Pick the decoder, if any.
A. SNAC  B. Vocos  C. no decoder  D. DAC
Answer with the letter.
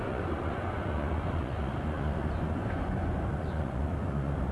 B